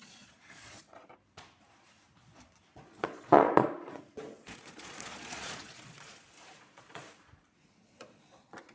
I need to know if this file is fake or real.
fake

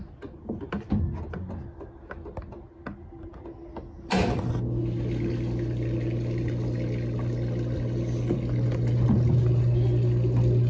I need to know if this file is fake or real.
real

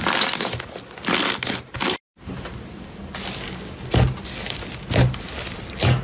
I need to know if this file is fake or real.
real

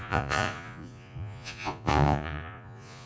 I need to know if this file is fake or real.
fake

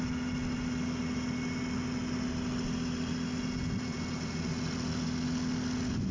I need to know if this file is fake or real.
real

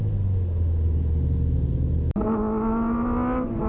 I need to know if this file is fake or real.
real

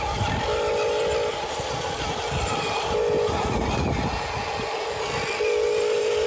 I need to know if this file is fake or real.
real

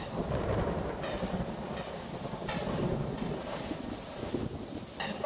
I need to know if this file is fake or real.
real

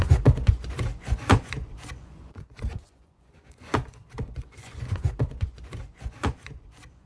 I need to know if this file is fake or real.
fake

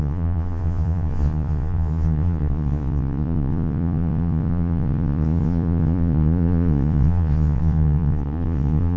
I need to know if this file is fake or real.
fake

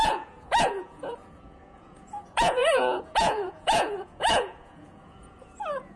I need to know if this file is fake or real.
fake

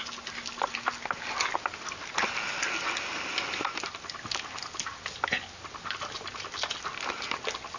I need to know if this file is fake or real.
real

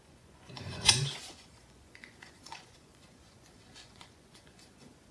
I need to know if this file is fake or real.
fake